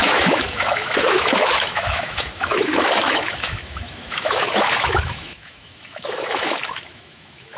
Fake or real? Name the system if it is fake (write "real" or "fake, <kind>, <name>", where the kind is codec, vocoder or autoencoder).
fake, autoencoder, DAC-VAE